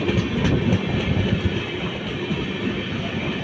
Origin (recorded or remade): recorded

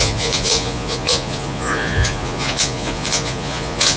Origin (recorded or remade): remade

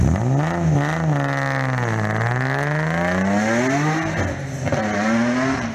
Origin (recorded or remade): recorded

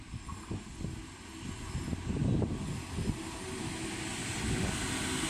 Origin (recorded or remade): recorded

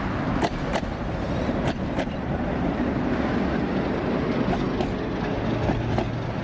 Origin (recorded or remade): recorded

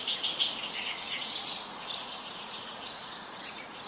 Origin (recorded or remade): remade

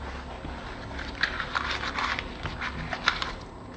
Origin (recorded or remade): recorded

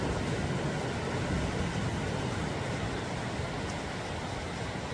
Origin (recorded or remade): recorded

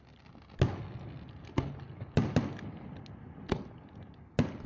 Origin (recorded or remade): recorded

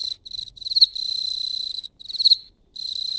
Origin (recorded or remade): recorded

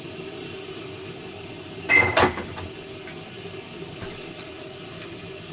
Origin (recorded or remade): recorded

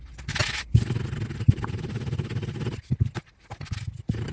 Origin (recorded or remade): recorded